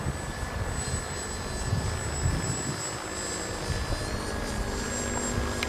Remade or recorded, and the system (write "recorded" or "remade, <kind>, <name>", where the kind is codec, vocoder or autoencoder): recorded